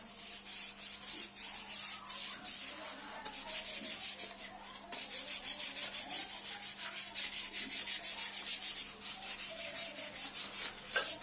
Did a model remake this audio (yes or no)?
no